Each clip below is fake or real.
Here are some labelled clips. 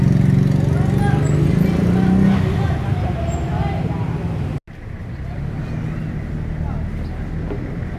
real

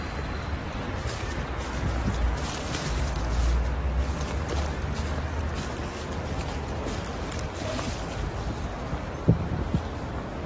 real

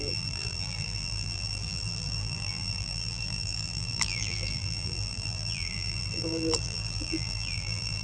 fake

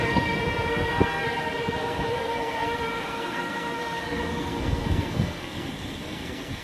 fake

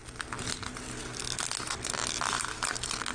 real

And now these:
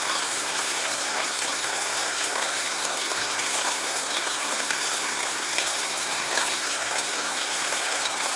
fake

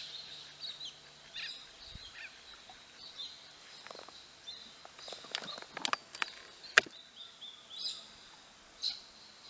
real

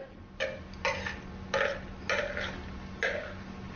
real